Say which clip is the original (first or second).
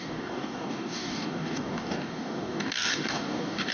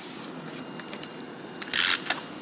second